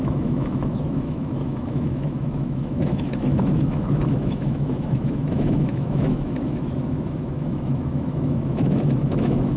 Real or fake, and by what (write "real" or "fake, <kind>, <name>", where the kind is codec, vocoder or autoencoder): fake, autoencoder, DAC-VAE